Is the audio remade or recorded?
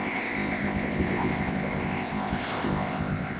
remade